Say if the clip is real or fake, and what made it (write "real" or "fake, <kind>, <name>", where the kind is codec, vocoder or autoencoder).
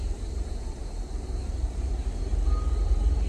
fake, vocoder, BigVGAN v2